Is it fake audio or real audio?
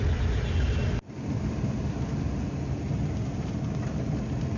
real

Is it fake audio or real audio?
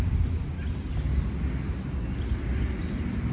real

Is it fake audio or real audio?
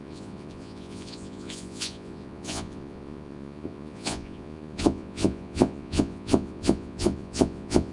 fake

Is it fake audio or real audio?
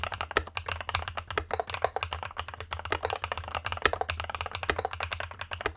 real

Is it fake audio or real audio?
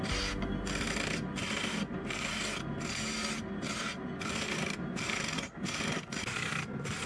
real